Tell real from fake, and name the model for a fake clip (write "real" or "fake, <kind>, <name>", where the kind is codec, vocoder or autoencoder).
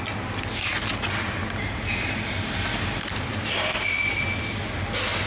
real